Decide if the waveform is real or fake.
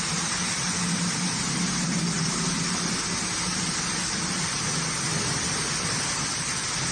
real